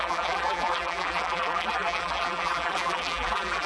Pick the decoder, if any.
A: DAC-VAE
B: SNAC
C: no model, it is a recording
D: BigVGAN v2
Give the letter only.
D